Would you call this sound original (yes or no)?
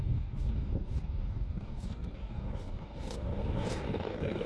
no